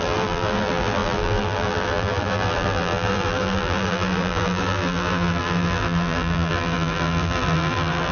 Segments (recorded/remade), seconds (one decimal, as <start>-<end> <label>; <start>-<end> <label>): 0.0-8.1 remade